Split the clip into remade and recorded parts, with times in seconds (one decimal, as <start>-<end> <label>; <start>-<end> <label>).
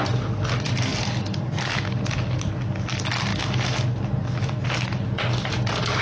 0.0-6.0 recorded